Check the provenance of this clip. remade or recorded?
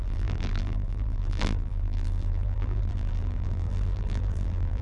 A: remade